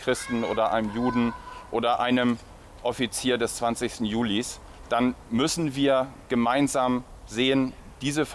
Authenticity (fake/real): real